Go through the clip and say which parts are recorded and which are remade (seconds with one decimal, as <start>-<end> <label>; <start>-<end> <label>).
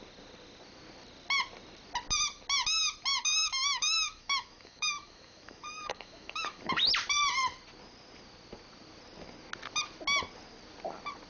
0.0-3.2 recorded; 3.2-6.8 remade; 6.8-11.3 recorded